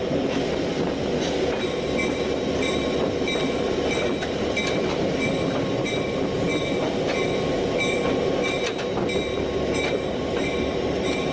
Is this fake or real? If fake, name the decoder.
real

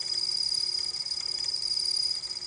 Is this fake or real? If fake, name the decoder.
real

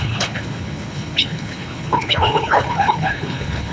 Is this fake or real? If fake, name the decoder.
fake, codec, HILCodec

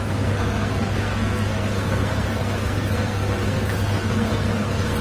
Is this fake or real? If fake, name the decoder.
fake, codec, SNAC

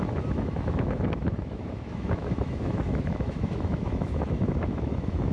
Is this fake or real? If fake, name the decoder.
fake, autoencoder, DAC-VAE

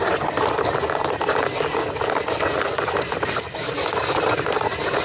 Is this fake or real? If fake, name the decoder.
real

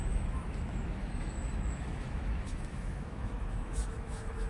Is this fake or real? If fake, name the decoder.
fake, autoencoder, DAC-VAE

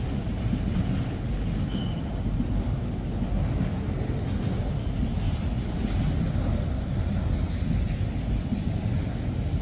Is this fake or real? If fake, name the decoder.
real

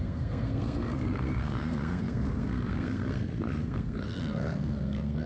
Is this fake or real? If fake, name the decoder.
fake, codec, SNAC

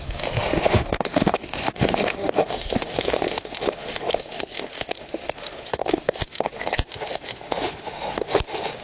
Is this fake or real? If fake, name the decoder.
fake, autoencoder, DAC-VAE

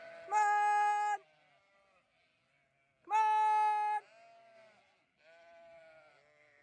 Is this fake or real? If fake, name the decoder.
real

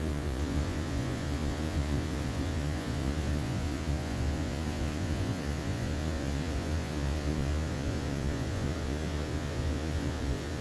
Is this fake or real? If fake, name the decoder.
fake, vocoder, Vocos